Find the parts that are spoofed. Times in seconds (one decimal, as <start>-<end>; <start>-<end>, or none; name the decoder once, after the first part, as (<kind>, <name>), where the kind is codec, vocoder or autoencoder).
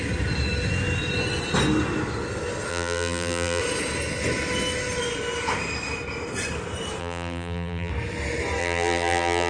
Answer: 2.7-3.6 (vocoder, BigVGAN v2); 7.0-7.9; 8.6-9.5